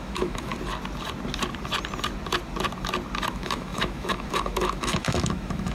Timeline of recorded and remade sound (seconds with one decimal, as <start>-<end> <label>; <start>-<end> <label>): 0.0-0.5 remade; 0.5-3.3 recorded; 3.3-5.7 remade